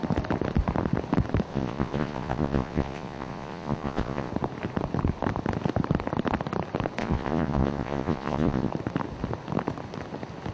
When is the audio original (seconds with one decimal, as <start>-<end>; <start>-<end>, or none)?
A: 0.0-1.5; 4.3-7.0; 8.7-10.5